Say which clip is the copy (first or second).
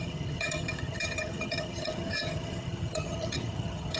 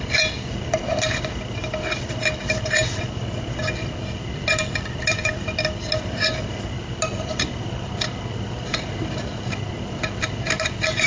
first